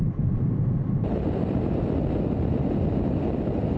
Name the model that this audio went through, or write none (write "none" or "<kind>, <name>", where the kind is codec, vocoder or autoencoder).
none